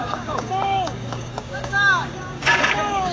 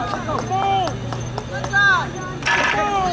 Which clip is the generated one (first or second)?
first